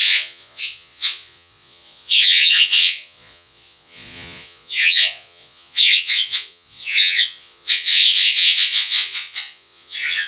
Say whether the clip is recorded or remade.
remade